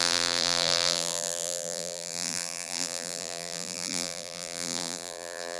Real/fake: fake